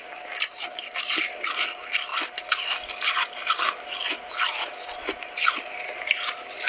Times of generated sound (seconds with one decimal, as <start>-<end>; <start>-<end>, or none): none